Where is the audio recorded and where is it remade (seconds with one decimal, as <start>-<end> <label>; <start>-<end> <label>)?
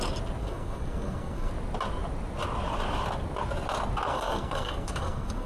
0.0-0.4 recorded; 0.4-1.5 remade; 1.5-4.1 recorded; 4.1-5.5 remade